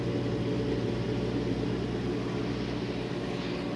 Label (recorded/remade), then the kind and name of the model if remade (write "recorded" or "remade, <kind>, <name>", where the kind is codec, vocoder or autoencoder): recorded